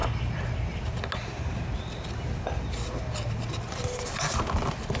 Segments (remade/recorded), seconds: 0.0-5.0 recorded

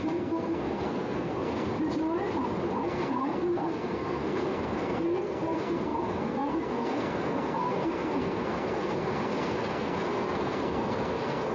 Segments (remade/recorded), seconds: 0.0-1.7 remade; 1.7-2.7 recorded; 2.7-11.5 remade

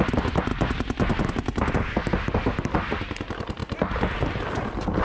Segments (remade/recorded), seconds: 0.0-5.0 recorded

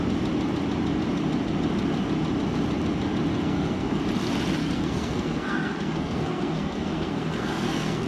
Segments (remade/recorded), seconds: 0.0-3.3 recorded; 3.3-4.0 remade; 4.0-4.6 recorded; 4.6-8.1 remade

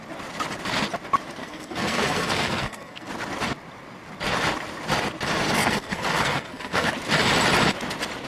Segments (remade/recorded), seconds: 0.0-1.4 recorded; 1.4-3.1 remade; 3.1-5.6 recorded; 5.6-6.9 remade; 6.9-8.3 recorded

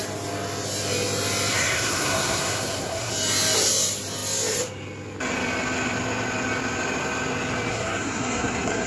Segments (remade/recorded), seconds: 0.0-1.5 recorded; 1.5-3.1 remade; 3.1-7.7 recorded; 7.7-8.9 remade

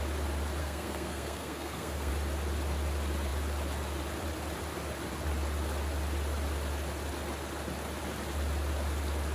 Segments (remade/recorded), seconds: 0.0-0.6 recorded; 0.6-2.1 remade; 2.1-9.3 recorded